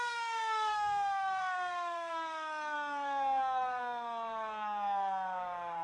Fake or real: fake